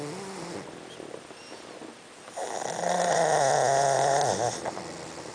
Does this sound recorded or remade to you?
recorded